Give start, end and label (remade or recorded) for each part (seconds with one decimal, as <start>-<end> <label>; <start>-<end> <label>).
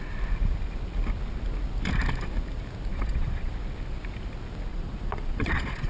0.0-2.9 recorded; 2.9-3.5 remade; 3.5-4.7 recorded; 4.7-5.9 remade